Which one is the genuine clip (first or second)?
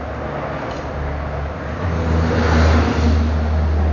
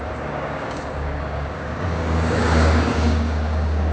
first